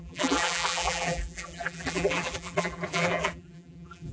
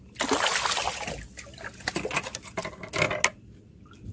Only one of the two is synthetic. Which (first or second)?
first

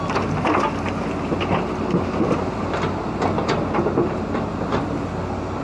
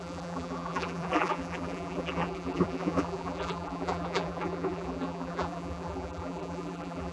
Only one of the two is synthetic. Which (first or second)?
second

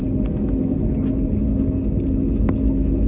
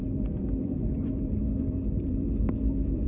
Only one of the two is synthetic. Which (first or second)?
second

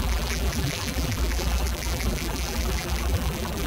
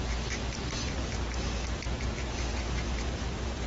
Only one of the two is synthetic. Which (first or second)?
first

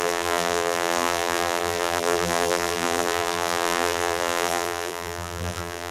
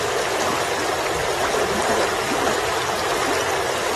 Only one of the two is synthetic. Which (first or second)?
first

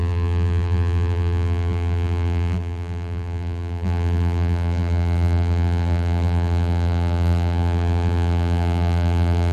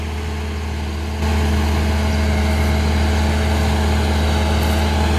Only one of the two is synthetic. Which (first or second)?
first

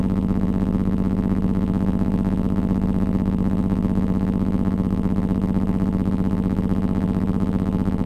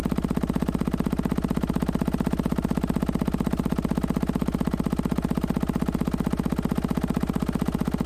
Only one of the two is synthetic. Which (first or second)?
first